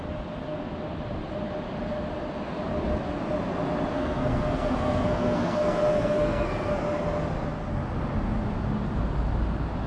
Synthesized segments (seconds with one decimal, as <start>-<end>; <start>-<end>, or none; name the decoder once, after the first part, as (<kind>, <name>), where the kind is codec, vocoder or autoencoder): 3.9-6.8 (codec, SNAC)